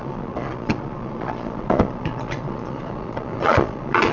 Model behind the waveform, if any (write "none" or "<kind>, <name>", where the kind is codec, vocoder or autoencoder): vocoder, Vocos